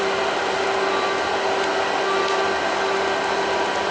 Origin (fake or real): real